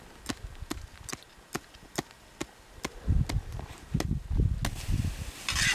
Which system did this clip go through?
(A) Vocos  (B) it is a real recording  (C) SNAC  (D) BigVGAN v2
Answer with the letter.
B